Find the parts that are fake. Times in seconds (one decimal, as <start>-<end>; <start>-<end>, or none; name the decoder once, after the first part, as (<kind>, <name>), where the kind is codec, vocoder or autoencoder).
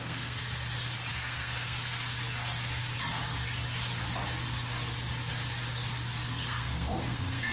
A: 0.0-0.4 (codec, SNAC); 1.1-1.9; 6.3-7.5